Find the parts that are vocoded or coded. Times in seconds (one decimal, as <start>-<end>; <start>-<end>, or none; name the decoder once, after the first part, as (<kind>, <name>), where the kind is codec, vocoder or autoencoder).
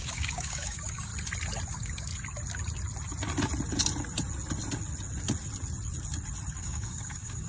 0.0-1.1 (codec, DAC); 1.7-2.1; 6.6-7.5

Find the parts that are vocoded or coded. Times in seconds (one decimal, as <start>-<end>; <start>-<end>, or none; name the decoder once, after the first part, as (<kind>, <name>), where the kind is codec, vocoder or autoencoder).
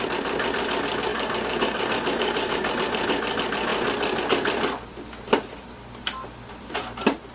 1.1-2.7 (codec, DAC)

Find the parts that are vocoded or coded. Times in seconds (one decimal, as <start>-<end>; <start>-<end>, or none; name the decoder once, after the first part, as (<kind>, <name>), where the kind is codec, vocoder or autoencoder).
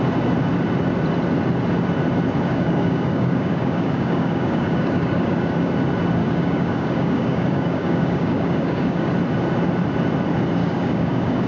2.5-5.7 (codec, DAC); 6.2-9.1; 10.6-11.5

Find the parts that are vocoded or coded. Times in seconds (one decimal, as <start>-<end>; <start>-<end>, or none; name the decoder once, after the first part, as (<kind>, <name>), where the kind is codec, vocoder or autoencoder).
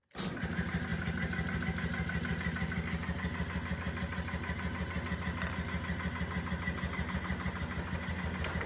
none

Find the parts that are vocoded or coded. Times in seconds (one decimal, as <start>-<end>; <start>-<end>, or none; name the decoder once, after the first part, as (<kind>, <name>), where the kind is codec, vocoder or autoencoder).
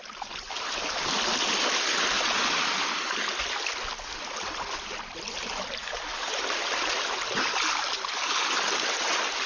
5.8-6.3 (codec, DAC)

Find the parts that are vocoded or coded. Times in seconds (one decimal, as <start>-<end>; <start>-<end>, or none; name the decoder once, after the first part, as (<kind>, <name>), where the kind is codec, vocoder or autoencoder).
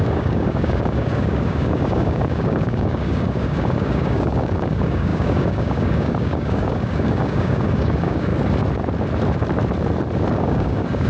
0.0-8.3 (codec, DAC); 10.3-11.1